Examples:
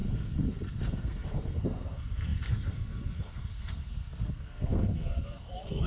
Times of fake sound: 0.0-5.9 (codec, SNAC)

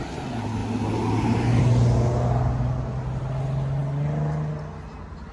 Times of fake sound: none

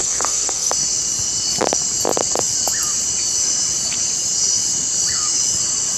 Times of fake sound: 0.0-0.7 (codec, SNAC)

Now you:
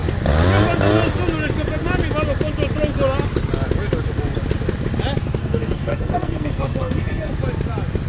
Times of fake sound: 5.4-7.3 (codec, SNAC)

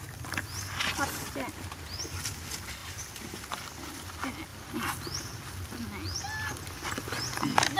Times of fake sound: 2.8-3.3 (vocoder, BigVGAN v2)

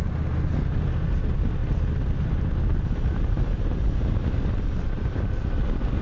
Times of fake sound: none

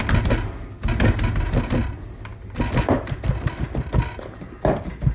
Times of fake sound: none

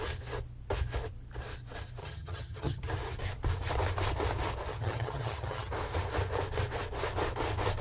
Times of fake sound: 2.0-2.8 (vocoder, HiFi-GAN); 4.7-5.7